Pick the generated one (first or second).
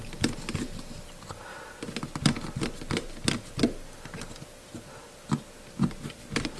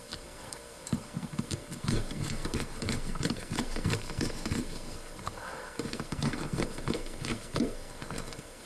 second